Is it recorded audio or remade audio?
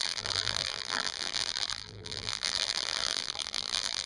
remade